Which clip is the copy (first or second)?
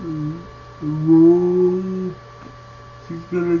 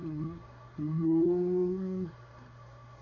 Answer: second